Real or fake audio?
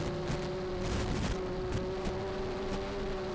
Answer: real